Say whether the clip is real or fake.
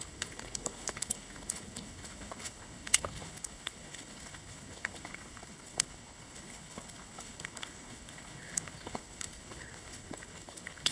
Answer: fake